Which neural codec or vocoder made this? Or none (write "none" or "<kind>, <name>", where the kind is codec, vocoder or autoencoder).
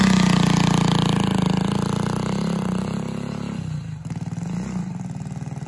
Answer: none